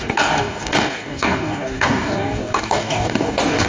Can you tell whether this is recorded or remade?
remade